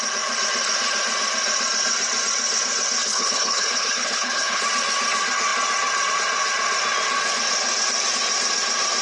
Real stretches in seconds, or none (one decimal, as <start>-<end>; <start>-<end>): 0.0-3.0; 4.6-9.0